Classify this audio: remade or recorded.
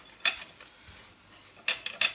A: recorded